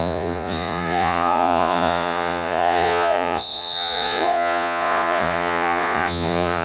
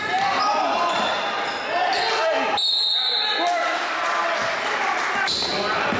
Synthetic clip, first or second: first